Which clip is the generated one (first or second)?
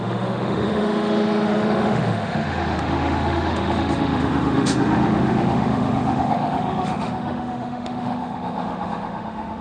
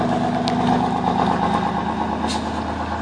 first